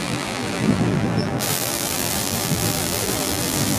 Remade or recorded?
remade